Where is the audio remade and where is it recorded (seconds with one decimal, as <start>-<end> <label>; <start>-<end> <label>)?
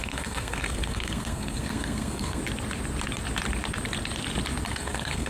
0.0-2.4 remade; 2.4-4.7 recorded; 4.7-5.3 remade